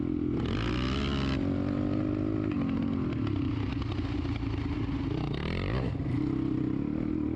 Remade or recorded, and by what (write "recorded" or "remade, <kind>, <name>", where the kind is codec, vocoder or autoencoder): recorded